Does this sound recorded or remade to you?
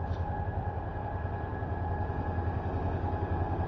recorded